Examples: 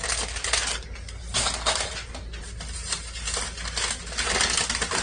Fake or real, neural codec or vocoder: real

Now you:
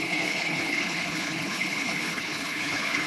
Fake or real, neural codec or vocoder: fake, codec, HILCodec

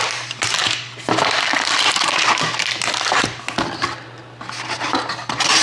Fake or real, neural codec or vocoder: real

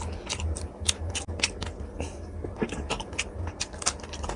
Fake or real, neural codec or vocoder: real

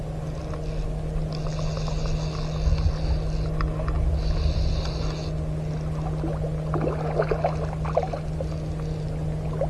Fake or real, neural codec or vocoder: real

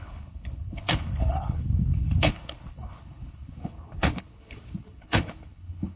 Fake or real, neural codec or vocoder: fake, codec, HILCodec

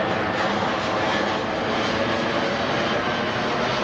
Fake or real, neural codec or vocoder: real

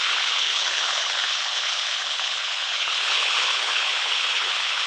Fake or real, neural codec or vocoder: fake, codec, HILCodec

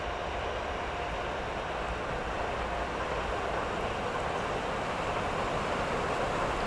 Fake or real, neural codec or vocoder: real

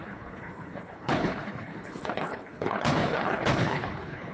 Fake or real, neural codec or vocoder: fake, codec, HILCodec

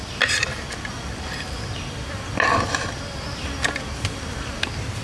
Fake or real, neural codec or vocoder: real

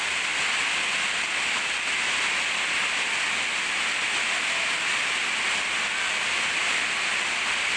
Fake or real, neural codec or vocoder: real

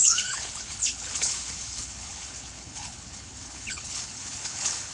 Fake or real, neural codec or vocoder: fake, codec, HILCodec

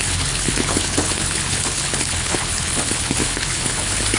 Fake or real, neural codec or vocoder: fake, codec, HILCodec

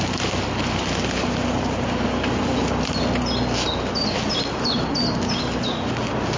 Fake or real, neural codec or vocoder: real